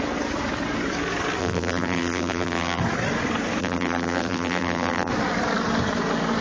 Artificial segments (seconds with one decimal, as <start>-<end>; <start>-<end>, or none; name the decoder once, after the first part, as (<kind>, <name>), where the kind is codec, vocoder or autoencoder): 1.4-2.8 (vocoder, BigVGAN v2); 3.6-5.1